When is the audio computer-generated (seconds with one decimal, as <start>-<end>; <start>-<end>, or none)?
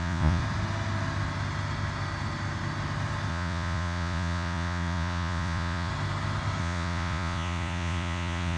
0.0-0.4; 3.3-5.9; 6.6-8.6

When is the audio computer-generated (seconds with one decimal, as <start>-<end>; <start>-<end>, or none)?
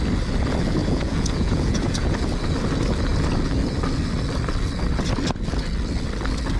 0.8-2.2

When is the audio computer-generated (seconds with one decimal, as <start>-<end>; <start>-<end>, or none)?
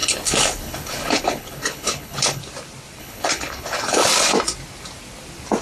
0.0-2.4; 3.0-4.0